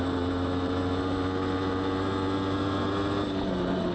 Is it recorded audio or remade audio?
recorded